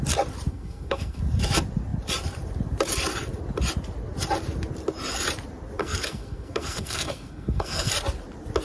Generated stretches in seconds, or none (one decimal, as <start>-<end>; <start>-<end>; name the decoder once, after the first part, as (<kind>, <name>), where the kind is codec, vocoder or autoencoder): 0.5-1.2 (codec, SNAC); 5.8-7.9